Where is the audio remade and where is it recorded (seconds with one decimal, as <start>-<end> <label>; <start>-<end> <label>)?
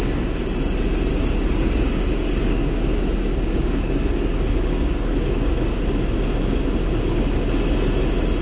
0.0-1.1 recorded; 1.1-5.9 remade; 5.9-8.4 recorded